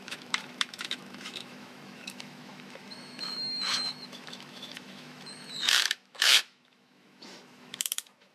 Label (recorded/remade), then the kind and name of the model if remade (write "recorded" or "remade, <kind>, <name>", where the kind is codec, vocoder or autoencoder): remade, autoencoder, DAC-VAE